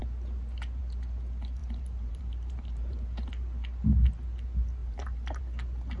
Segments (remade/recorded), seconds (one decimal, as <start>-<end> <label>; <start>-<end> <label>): 0.0-1.6 recorded; 1.6-3.3 remade; 3.3-4.8 recorded; 4.8-5.4 remade; 5.4-6.0 recorded